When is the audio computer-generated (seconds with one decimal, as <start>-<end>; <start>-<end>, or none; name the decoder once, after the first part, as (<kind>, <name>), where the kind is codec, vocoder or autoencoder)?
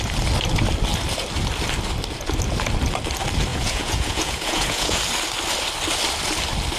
3.5-5.0 (vocoder, Vocos)